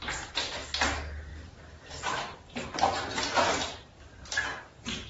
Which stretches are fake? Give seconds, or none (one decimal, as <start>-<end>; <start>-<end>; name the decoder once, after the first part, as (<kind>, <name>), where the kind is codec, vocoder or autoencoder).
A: 1.3-4.4 (vocoder, BigVGAN v2)